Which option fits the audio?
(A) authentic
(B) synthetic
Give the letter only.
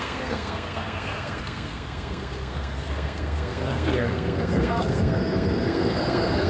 B